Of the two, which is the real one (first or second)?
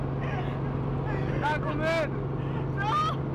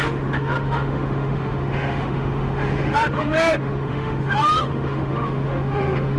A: first